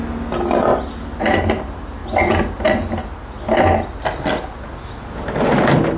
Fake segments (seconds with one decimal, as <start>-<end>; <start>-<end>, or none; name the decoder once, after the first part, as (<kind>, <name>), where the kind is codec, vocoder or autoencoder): none